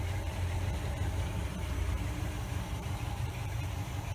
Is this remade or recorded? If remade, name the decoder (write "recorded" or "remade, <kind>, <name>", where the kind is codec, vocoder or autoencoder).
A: remade, vocoder, BigVGAN v2